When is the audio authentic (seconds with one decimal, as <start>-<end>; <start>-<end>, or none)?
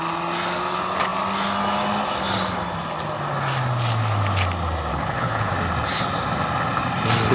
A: 0.0-4.9; 5.5-7.3